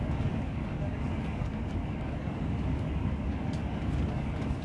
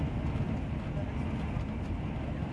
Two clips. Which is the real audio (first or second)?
second